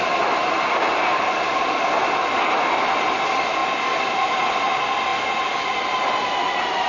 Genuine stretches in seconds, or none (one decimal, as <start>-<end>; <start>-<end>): 0.0-6.9